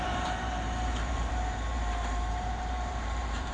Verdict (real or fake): fake